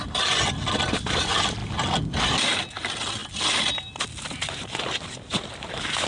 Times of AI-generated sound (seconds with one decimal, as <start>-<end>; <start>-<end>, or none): none

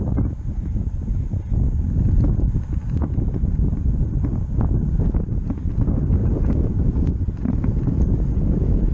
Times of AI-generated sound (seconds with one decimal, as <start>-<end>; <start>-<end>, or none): 6.2-7.1

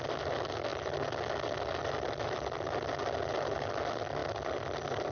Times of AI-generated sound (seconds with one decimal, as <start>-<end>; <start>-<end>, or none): none

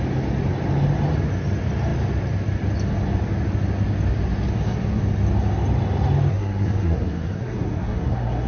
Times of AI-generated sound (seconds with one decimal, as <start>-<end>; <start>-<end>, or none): 4.5-5.0; 6.3-8.5

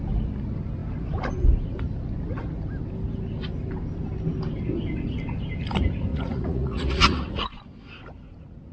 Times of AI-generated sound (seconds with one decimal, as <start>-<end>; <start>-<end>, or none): 6.1-7.6